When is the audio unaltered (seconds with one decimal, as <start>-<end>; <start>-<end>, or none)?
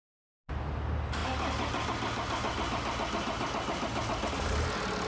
0.0-5.1